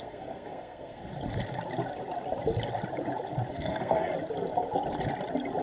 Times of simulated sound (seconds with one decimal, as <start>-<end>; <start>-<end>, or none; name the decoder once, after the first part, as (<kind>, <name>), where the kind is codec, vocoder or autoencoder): 0.0-1.1 (codec, SNAC); 3.5-4.1